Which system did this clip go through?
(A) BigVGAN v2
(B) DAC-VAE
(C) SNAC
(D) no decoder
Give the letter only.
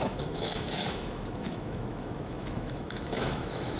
B